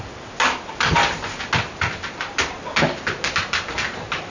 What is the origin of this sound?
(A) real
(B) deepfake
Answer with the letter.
A